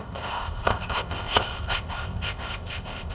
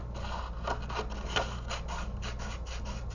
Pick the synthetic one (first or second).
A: first